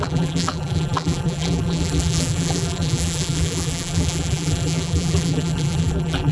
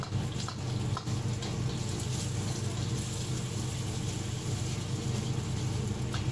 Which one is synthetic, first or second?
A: first